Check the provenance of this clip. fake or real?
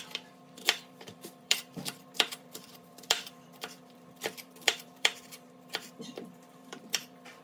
fake